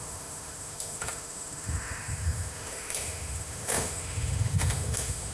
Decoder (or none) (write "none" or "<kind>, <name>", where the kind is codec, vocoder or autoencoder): autoencoder, DAC-VAE